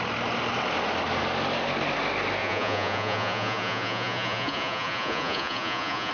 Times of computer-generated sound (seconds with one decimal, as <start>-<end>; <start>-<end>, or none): 2.4-6.1